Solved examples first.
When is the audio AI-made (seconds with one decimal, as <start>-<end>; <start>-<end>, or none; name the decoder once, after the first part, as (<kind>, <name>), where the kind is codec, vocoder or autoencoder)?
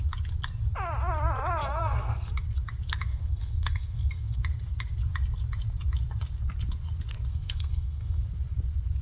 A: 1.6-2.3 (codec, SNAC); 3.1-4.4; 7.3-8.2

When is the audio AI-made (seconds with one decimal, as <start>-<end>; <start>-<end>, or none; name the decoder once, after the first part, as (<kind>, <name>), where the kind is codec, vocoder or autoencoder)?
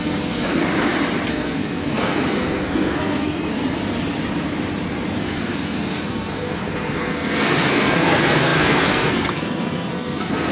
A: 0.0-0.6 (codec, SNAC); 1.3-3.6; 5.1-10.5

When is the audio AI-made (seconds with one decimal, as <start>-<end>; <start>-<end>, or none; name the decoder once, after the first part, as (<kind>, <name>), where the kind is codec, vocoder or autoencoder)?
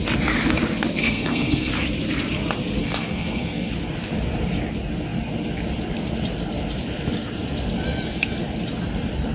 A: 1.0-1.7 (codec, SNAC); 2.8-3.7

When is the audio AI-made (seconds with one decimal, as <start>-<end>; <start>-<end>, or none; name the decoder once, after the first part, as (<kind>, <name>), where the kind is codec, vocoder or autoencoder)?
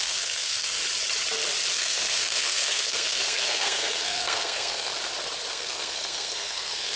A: 0.0-0.8 (codec, SNAC); 1.7-4.9; 5.5-7.0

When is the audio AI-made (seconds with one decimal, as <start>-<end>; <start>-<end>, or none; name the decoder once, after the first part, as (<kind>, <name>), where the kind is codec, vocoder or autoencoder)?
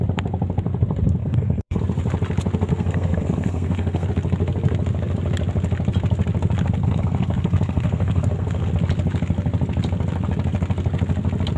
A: 1.2-1.8 (codec, SNAC); 2.7-4.1; 6.8-8.7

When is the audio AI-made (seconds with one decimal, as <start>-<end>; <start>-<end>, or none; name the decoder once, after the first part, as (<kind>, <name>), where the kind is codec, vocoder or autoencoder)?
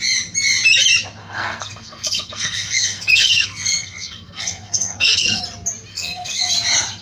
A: 1.2-5.4 (codec, SNAC); 5.9-6.5